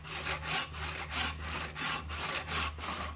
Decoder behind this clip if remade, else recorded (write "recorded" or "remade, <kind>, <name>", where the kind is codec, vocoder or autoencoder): recorded